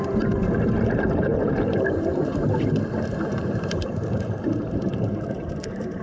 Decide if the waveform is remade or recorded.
remade